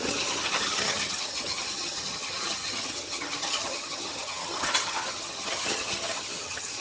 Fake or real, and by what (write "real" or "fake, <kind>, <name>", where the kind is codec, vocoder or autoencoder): fake, vocoder, HiFi-GAN